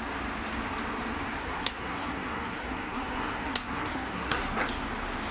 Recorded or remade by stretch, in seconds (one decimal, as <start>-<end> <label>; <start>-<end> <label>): 0.0-1.4 recorded; 1.4-4.6 remade; 4.6-5.3 recorded

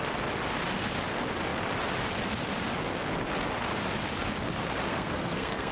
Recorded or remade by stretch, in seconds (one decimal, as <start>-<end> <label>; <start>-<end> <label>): 0.0-4.9 recorded; 4.9-5.7 remade

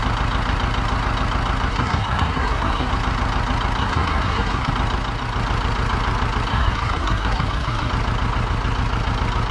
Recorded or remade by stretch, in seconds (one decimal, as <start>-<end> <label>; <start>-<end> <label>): 0.0-1.7 recorded; 1.7-2.9 remade; 2.9-3.8 recorded; 3.8-4.7 remade; 4.7-6.5 recorded; 6.5-7.9 remade; 7.9-9.5 recorded

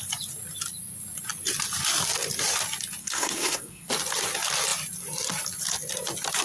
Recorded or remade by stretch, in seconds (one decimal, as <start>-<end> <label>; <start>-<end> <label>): 0.0-3.0 recorded; 3.0-3.9 remade; 3.9-6.4 recorded

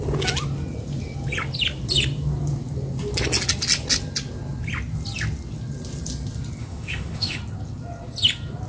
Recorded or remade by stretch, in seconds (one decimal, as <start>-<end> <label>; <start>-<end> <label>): 0.0-6.6 recorded; 6.6-7.4 remade; 7.4-8.7 recorded

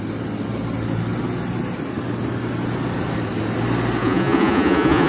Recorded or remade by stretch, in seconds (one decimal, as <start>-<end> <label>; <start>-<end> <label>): 0.0-4.0 recorded; 4.0-5.1 remade

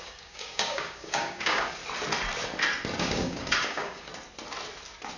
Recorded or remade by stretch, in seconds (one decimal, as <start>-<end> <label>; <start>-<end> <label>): 0.0-1.8 remade; 1.8-3.0 recorded; 3.0-4.1 remade; 4.1-5.2 recorded

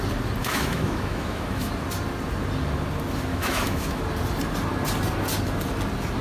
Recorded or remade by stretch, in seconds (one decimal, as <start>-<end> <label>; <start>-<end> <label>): 0.0-0.4 recorded; 0.4-1.7 remade; 1.7-3.3 recorded; 3.3-4.0 remade; 4.0-6.2 recorded